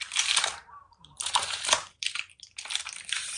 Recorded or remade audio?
remade